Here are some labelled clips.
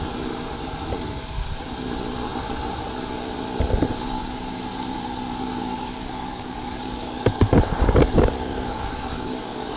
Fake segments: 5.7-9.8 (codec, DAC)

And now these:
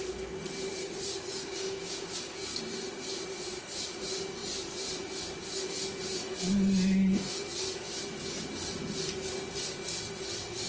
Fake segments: 0.8-2.6 (codec, DAC)

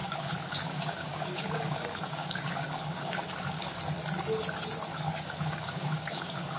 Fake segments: 0.0-3.8 (codec, DAC); 4.9-6.6

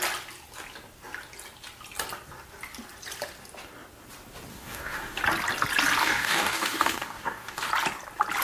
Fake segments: 4.5-5.2 (codec, DAC); 6.0-7.7

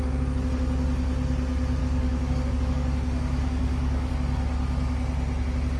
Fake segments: 1.8-4.1 (codec, DAC)

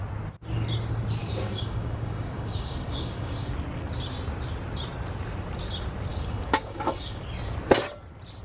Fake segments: 1.2-3.5 (codec, DAC); 6.1-7.2